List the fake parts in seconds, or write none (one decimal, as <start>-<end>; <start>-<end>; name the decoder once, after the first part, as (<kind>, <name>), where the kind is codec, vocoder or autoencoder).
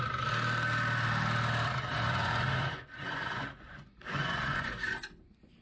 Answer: 1.9-4.7 (vocoder, Vocos)